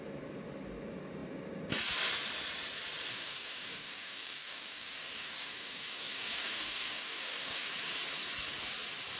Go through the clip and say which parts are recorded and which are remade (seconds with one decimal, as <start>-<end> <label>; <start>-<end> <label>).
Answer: 0.0-3.1 recorded; 3.1-7.7 remade; 7.7-9.2 recorded